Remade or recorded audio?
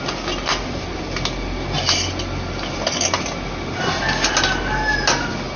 recorded